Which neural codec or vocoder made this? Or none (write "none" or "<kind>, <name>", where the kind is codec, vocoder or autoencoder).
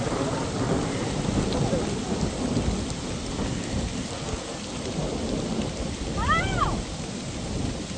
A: none